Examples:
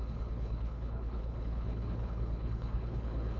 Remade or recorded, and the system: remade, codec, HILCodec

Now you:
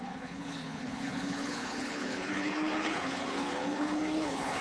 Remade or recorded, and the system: remade, codec, HILCodec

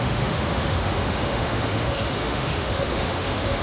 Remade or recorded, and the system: remade, autoencoder, DAC-VAE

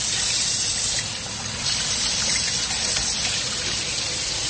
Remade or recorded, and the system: recorded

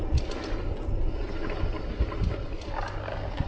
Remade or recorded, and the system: recorded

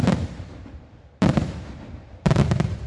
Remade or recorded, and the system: remade, vocoder, BigVGAN v2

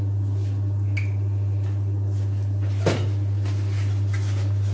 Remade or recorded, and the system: recorded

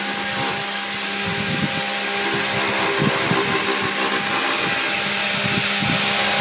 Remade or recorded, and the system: recorded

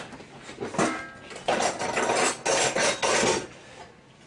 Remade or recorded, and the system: recorded